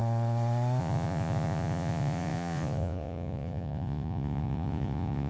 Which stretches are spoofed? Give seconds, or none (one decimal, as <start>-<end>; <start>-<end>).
0.8-5.3